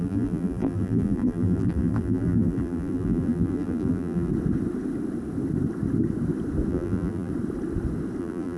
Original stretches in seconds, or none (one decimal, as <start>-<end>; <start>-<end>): 4.3-6.7; 7.3-8.2